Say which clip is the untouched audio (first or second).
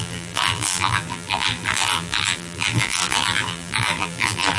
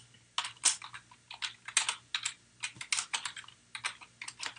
second